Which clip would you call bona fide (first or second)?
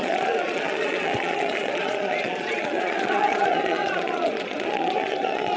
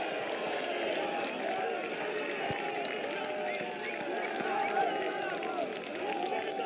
second